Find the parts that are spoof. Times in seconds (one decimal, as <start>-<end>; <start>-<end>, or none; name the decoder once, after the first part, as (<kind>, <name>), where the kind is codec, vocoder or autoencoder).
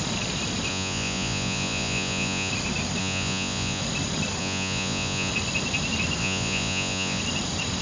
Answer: 0.7-2.5 (vocoder, Vocos); 3.0-3.8; 4.4-5.3; 6.2-7.2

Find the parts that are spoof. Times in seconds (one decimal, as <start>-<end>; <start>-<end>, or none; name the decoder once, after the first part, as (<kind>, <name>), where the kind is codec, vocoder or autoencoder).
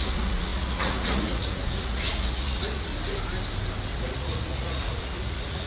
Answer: 0.0-2.9 (vocoder, Vocos); 3.9-5.7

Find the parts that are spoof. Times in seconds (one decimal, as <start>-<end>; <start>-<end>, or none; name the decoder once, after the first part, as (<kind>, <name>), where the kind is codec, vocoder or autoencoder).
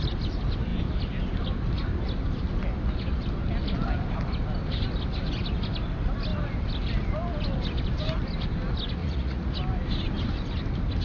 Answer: 9.0-9.5 (vocoder, Vocos)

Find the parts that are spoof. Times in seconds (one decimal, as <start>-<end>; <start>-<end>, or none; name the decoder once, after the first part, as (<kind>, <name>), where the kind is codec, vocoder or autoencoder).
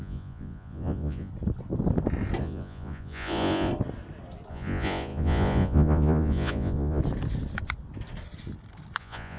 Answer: 0.0-1.3 (vocoder, Vocos); 2.4-3.7; 4.5-7.0; 9.0-9.4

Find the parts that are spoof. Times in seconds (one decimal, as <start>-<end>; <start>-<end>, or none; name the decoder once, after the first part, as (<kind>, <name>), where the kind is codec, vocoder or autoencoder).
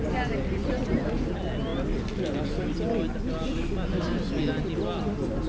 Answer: none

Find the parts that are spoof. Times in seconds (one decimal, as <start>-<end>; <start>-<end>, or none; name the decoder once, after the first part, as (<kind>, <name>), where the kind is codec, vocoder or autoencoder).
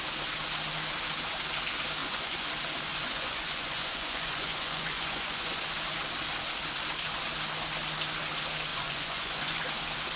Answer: 2.0-2.5 (vocoder, Vocos); 2.9-5.6; 8.7-9.6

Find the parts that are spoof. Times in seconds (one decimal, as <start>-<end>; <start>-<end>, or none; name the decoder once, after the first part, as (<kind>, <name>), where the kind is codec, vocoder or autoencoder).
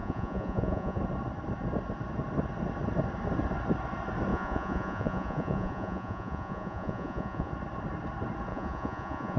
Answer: 0.0-1.0 (vocoder, Vocos); 4.3-7.5; 8.5-9.4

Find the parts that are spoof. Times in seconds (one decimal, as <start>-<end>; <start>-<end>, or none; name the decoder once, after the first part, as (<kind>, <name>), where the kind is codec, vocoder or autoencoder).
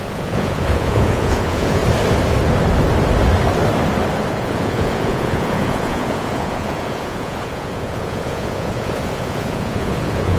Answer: 0.0-1.8 (vocoder, Vocos); 4.3-10.4